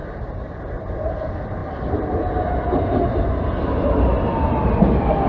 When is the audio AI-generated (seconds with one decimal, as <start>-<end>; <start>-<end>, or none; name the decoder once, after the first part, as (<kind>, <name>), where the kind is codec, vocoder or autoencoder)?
none